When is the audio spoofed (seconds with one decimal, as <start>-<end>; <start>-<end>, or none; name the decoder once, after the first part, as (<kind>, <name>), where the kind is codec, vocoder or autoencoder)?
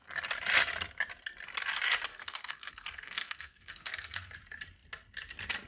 2.1-4.3 (codec, SNAC)